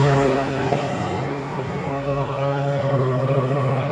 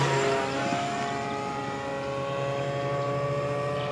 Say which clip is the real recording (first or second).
second